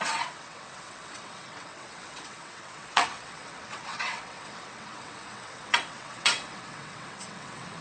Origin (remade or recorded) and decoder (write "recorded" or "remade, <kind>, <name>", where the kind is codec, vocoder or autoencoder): remade, vocoder, WaveNeXt